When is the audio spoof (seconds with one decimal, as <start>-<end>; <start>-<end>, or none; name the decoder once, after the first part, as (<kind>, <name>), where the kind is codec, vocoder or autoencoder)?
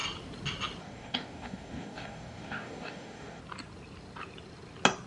0.8-3.4 (codec, DAC)